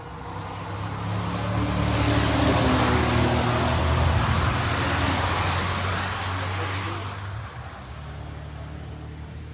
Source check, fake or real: real